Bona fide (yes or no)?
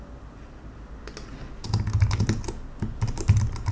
yes